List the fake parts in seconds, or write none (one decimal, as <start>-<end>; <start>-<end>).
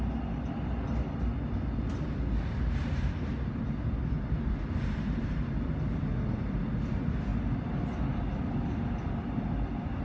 none